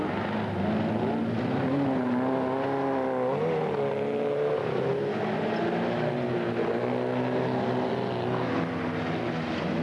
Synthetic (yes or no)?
no